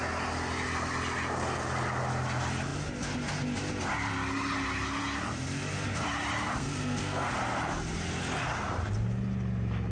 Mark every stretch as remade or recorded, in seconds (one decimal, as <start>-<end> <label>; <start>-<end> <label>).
0.0-6.6 recorded; 6.6-7.3 remade; 7.3-9.9 recorded